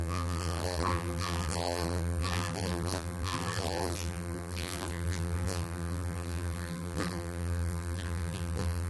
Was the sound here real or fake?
fake